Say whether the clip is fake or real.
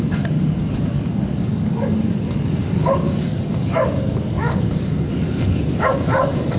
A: fake